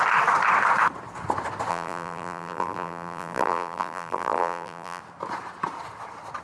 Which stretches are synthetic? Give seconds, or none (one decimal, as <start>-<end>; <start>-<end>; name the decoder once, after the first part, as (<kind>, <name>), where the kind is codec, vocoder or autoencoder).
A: 1.7-5.0 (vocoder, BigVGAN v2)